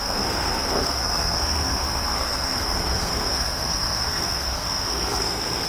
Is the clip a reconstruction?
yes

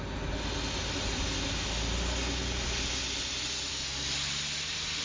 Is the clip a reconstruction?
no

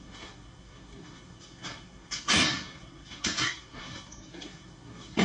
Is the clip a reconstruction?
yes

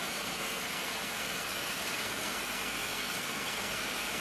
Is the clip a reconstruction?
yes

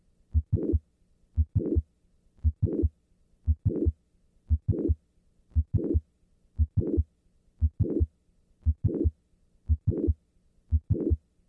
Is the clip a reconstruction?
no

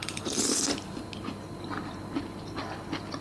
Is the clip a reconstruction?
no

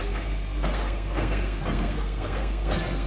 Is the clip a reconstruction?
yes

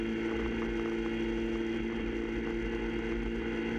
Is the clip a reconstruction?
no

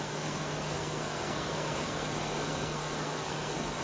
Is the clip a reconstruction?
yes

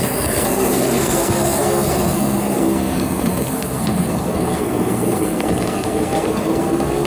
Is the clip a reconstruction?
yes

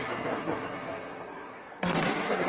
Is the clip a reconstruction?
yes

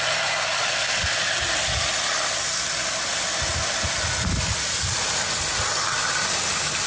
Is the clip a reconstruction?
no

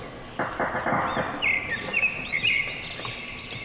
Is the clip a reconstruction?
no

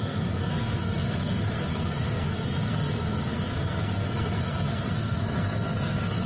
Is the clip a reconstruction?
yes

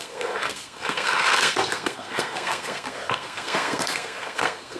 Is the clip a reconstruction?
yes